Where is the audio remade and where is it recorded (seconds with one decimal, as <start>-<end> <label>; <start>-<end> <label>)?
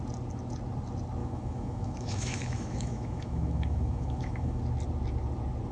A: 0.0-1.2 recorded; 1.2-4.6 remade; 4.6-5.7 recorded